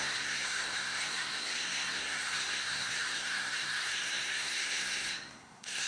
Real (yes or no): no